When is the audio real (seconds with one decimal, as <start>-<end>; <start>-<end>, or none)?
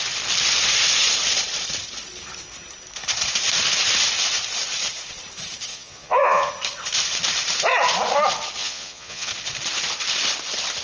0.0-5.7; 6.5-8.6; 9.3-10.8